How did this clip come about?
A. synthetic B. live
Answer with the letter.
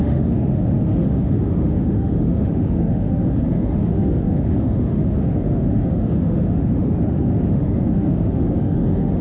A